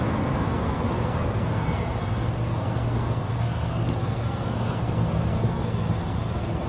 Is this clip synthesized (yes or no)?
yes